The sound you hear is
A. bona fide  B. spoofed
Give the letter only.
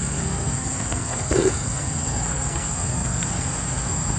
B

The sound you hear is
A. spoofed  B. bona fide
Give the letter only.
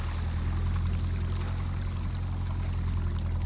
B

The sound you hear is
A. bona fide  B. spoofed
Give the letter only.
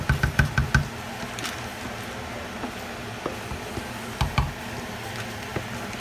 A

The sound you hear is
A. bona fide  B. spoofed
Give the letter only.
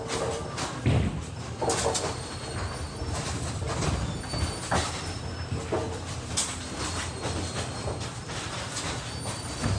A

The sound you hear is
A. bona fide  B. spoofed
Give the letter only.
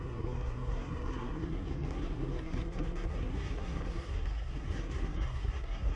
B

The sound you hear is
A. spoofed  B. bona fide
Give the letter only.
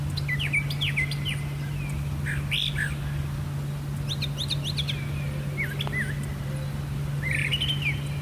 B